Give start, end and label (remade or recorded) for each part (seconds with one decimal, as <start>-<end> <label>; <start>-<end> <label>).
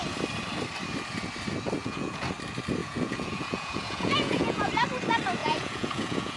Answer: 0.0-1.8 recorded; 1.8-2.3 remade; 2.3-2.8 recorded; 2.8-4.7 remade; 4.7-5.4 recorded; 5.4-6.4 remade